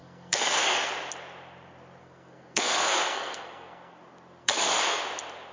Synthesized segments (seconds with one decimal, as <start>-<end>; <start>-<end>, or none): 0.0-0.9; 2.0-4.0; 4.4-5.0